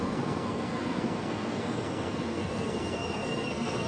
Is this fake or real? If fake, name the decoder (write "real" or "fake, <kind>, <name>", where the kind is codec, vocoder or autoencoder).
fake, codec, SNAC